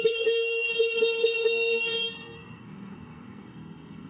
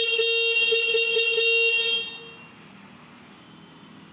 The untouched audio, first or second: second